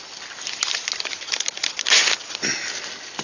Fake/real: real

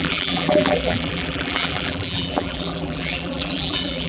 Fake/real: fake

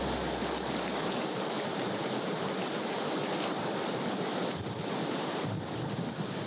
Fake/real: real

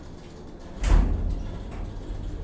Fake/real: real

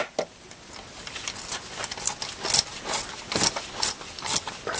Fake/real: real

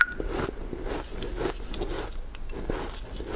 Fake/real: real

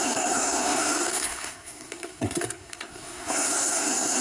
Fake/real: fake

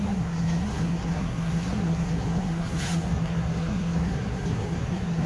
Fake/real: fake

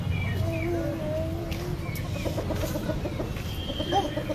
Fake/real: real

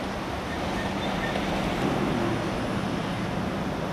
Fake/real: real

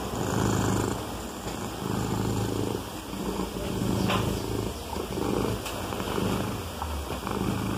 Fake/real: real